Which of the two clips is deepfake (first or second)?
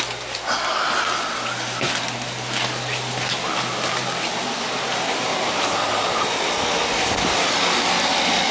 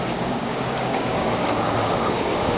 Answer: second